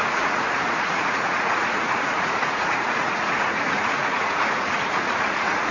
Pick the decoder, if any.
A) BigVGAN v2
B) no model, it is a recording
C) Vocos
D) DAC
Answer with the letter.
C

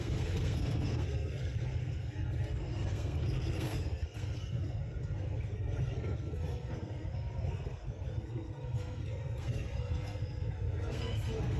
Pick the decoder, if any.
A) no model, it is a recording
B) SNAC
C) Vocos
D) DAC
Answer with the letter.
B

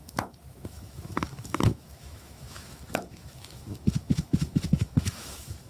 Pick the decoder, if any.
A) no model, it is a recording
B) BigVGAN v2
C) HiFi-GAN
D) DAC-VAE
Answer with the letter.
D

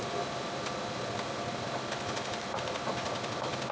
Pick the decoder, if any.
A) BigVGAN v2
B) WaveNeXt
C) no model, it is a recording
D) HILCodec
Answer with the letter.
C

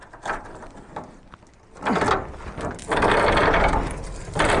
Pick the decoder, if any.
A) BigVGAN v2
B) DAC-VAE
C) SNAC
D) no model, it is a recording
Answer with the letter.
D